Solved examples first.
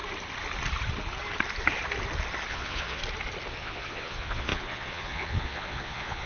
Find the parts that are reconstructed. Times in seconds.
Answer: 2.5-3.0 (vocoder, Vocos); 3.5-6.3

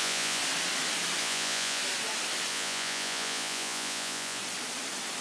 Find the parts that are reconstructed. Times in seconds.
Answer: 0.0-0.4 (vocoder, Vocos); 1.2-1.8; 2.5-4.4

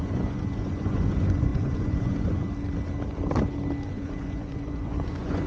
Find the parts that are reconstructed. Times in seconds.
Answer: 0.0-2.4 (vocoder, Vocos); 3.9-5.5

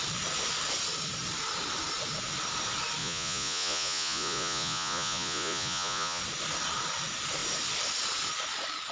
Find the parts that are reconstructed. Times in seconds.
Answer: 3.0-6.2 (vocoder, Vocos)